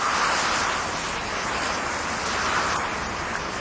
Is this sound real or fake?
real